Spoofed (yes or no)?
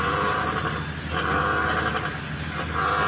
no